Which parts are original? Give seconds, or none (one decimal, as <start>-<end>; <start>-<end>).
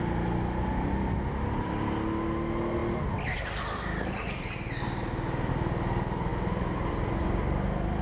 0.0-8.0